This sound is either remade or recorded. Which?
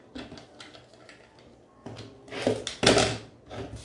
recorded